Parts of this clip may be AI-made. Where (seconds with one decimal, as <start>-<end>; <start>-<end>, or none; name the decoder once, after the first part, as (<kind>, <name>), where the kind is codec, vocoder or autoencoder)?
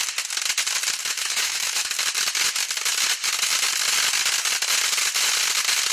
1.0-1.9 (autoencoder, DAC-VAE)